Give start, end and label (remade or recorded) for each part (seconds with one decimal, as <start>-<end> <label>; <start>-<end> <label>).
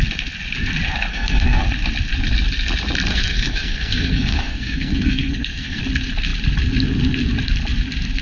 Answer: 0.0-1.1 recorded; 1.1-1.6 remade; 1.6-3.1 recorded; 3.1-5.8 remade; 5.8-8.2 recorded